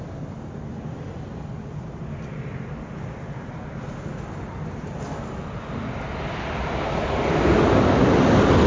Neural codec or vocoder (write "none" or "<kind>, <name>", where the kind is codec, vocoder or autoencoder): none